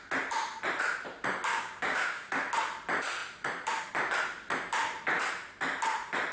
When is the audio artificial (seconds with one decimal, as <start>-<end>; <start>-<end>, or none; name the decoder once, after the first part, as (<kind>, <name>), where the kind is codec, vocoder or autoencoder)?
1.5-2.3 (codec, DAC)